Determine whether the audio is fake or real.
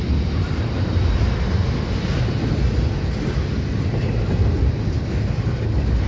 real